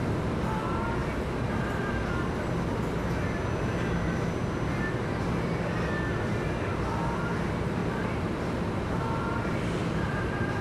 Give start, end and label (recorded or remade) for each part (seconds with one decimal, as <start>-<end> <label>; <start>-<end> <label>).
0.0-9.8 recorded; 9.8-10.6 remade